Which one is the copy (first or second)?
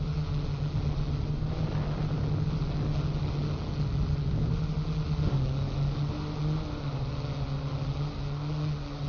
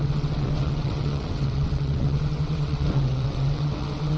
second